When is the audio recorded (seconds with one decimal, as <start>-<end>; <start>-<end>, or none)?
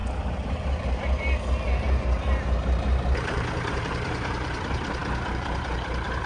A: none